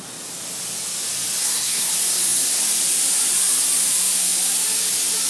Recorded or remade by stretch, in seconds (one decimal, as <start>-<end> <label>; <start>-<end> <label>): 0.0-1.4 recorded; 1.4-1.9 remade; 1.9-5.3 recorded